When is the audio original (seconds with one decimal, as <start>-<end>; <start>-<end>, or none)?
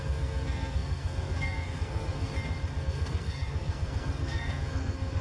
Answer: 2.3-2.8